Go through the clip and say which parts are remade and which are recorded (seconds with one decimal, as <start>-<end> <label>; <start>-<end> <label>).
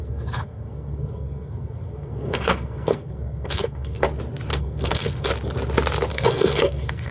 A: 0.0-4.0 remade; 4.0-4.5 recorded; 4.5-5.3 remade; 5.3-6.1 recorded; 6.1-7.1 remade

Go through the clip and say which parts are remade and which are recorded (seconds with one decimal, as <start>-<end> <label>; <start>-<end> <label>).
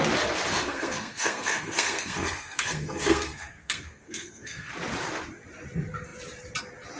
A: 0.0-0.5 recorded; 0.5-4.7 remade; 4.7-7.0 recorded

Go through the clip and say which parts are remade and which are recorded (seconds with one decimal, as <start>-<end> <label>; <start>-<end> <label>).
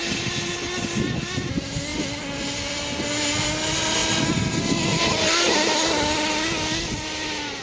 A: 0.0-7.6 recorded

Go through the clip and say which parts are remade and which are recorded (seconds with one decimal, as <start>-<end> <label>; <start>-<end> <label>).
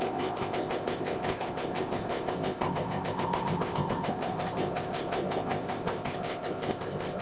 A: 0.0-7.2 remade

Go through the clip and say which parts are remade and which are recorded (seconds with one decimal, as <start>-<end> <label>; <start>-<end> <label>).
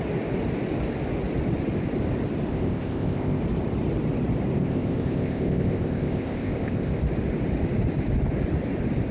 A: 0.0-2.5 recorded; 2.5-3.4 remade; 3.4-4.6 recorded; 4.6-7.0 remade; 7.0-9.1 recorded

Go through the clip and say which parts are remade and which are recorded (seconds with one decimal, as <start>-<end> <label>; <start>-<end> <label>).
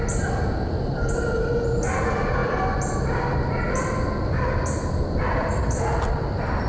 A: 0.0-6.7 recorded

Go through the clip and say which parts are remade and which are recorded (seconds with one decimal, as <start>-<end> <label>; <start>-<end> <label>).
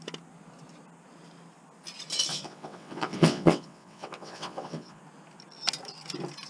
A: 0.0-2.3 recorded; 2.3-5.0 remade; 5.0-6.5 recorded